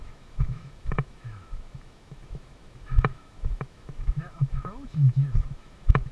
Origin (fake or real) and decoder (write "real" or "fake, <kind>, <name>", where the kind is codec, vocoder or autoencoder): fake, autoencoder, DAC-VAE